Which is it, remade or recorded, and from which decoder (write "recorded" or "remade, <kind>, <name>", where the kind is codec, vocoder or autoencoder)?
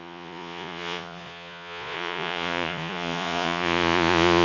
remade, vocoder, Vocos